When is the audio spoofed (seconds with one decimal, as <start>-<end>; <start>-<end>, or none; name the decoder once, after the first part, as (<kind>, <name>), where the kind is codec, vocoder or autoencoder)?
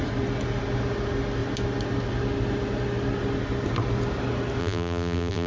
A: 4.6-5.5 (vocoder, BigVGAN v2)